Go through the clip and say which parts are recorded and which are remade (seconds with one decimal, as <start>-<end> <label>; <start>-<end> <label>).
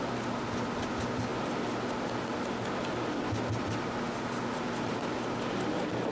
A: 0.0-6.1 recorded